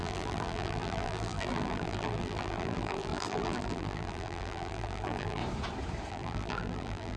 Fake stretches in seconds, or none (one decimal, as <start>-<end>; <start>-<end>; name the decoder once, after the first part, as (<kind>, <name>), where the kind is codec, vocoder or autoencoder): 0.0-5.4 (vocoder, BigVGAN v2); 6.1-7.2